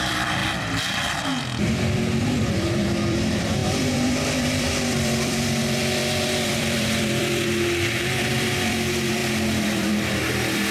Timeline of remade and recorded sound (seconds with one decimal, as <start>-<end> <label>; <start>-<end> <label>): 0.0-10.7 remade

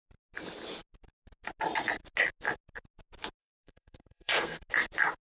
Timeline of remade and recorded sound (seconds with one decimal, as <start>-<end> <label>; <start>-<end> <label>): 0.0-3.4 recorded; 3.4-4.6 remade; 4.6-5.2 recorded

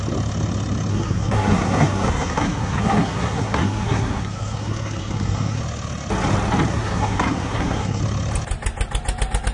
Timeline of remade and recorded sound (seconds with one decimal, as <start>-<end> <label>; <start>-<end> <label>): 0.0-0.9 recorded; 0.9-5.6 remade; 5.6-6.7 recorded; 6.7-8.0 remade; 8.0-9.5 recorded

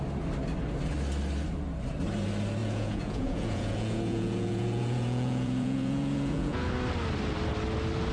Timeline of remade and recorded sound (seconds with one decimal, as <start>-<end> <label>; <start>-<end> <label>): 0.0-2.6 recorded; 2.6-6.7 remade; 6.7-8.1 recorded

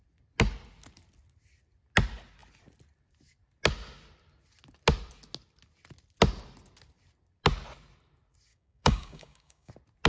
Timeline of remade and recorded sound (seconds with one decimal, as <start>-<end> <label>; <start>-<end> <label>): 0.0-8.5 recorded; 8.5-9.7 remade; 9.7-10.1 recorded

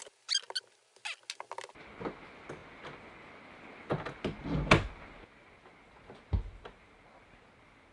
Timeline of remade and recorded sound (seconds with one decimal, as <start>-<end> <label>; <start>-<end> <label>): 0.0-7.9 recorded

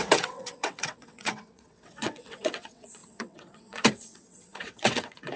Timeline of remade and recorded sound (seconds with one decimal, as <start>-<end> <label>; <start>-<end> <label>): 0.0-5.4 remade

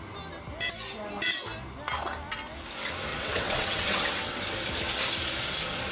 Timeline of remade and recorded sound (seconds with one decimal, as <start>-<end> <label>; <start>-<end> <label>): 0.0-3.1 recorded; 3.1-4.4 remade; 4.4-5.9 recorded